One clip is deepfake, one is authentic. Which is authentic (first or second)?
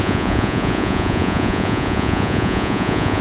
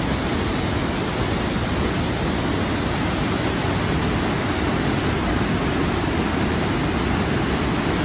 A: second